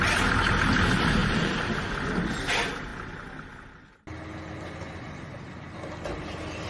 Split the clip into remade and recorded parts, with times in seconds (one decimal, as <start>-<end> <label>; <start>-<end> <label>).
0.0-1.2 recorded; 1.2-1.7 remade; 1.7-6.7 recorded